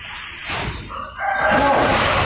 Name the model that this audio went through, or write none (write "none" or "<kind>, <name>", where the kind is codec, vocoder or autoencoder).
none